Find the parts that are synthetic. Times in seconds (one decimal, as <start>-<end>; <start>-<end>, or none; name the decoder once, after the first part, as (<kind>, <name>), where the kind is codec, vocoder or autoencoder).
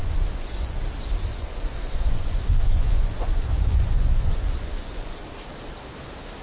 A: 0.0-0.8 (vocoder, Vocos); 1.3-5.1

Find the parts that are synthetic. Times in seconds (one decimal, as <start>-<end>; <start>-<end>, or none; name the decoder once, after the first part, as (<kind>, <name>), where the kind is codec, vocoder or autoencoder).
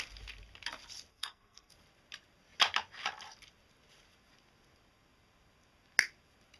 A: 1.1-1.7 (codec, SNAC)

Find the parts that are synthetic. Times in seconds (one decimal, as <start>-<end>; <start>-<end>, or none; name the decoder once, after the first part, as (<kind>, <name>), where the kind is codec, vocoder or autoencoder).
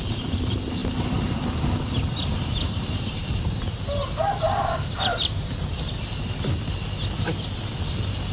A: none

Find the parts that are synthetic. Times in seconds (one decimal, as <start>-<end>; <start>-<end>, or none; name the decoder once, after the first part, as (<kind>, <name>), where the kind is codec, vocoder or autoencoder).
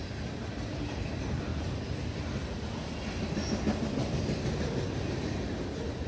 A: none